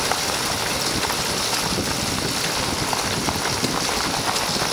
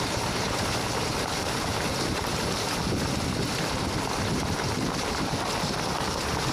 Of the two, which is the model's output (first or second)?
second